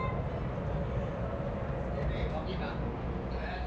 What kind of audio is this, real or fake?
real